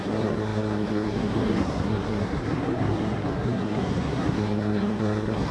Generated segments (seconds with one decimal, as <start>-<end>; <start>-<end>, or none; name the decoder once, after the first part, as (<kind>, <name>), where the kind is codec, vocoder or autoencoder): 0.0-5.5 (codec, SNAC)